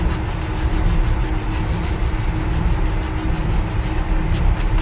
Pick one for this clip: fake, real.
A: real